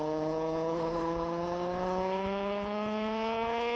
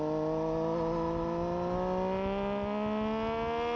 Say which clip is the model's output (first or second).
first